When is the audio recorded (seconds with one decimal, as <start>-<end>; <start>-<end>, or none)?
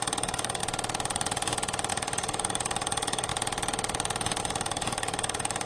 0.6-1.9; 3.3-4.4